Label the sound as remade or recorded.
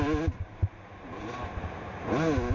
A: recorded